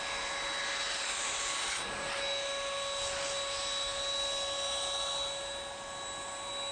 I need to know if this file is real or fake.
real